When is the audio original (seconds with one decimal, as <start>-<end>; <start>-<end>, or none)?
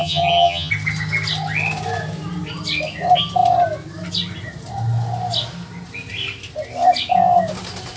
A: 0.7-8.0